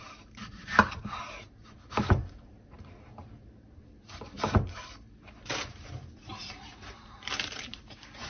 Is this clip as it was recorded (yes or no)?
no